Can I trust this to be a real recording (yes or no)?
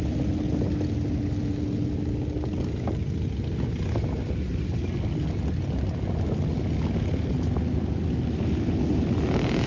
yes